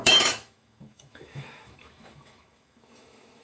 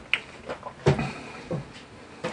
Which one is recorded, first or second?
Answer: second